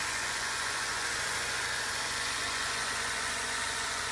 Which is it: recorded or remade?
remade